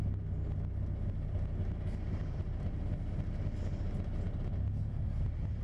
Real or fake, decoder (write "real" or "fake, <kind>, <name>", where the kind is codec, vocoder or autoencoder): real